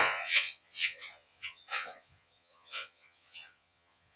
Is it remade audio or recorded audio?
remade